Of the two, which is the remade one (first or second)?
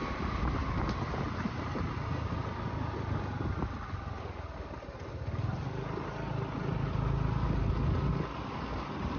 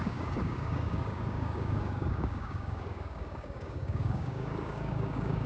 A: second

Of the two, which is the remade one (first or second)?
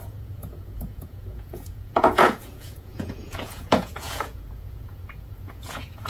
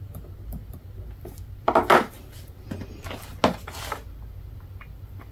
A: first